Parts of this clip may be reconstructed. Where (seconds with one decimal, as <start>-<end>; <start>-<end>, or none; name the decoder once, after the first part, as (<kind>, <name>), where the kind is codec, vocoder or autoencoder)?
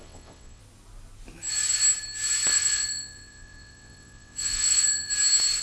0.0-0.6 (vocoder, WaveNeXt); 2.5-5.1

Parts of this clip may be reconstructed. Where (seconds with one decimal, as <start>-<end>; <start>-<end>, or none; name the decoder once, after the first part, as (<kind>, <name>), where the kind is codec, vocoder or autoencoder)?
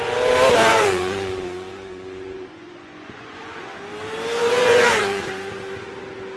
0.7-3.8 (vocoder, Vocos); 4.4-5.3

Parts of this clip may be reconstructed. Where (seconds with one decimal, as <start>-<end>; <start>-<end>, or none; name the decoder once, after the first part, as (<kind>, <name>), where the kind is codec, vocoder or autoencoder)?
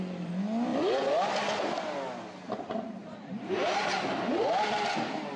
3.0-4.0 (vocoder, BigVGAN v2)